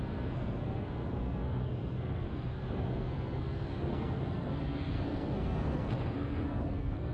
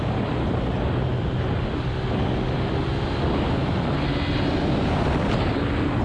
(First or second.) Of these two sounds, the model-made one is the first